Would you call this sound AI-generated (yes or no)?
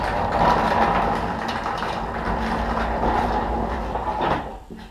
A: no